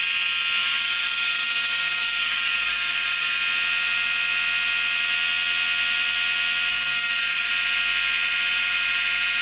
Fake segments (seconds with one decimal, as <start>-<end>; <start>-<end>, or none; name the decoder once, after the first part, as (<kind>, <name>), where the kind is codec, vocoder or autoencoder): 0.6-3.4 (codec, DAC); 6.7-7.5